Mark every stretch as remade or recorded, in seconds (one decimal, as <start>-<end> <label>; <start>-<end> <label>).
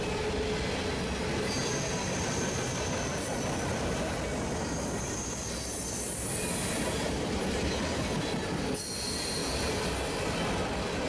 0.0-11.1 recorded